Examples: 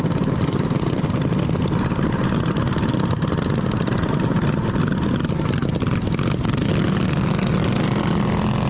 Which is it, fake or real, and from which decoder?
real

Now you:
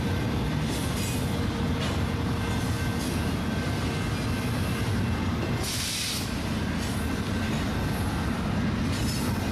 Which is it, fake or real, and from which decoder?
real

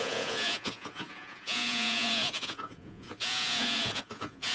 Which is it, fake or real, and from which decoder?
fake, vocoder, Vocos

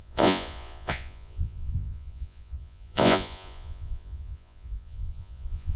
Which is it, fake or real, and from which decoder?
fake, vocoder, Vocos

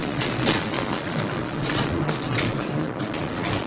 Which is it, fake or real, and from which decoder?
fake, vocoder, Vocos